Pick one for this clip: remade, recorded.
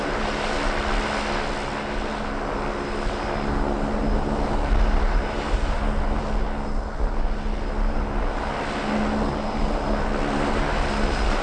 recorded